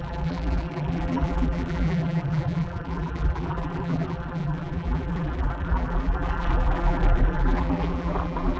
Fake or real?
fake